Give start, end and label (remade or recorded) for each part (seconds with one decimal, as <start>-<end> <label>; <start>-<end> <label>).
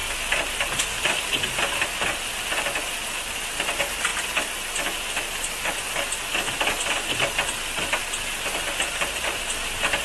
0.0-10.0 recorded